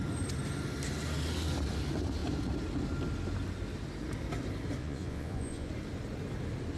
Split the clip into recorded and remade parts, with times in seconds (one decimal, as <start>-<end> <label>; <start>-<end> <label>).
0.0-4.8 recorded; 4.8-5.7 remade; 5.7-6.8 recorded